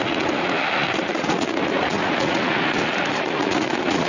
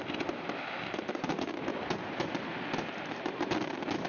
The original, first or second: second